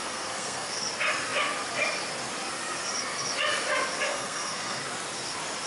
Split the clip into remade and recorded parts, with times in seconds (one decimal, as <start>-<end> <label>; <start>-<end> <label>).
0.0-0.8 remade; 0.8-4.1 recorded; 4.1-4.8 remade; 4.8-5.7 recorded